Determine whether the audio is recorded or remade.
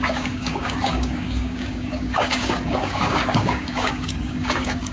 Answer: remade